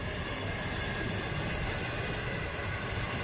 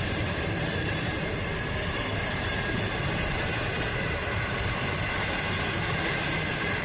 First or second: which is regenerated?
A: second